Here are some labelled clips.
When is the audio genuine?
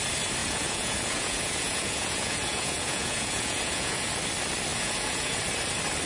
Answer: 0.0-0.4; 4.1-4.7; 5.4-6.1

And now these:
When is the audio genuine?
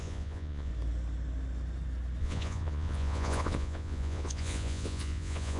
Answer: 0.7-2.2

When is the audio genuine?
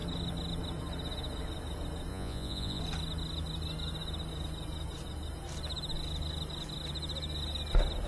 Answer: 0.0-2.1; 2.8-8.1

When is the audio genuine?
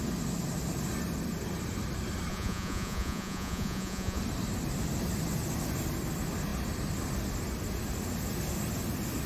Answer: 0.0-2.3; 4.2-9.3